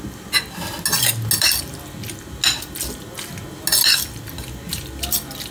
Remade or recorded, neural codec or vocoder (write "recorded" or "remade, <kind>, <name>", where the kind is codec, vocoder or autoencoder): recorded